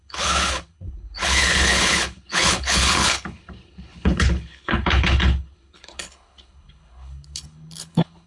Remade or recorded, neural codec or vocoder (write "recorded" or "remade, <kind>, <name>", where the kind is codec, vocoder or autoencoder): remade, codec, HILCodec